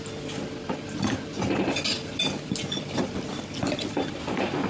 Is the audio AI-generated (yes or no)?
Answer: no